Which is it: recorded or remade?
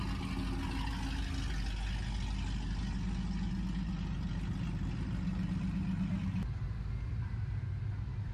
recorded